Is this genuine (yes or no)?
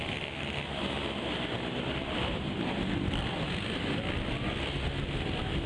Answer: yes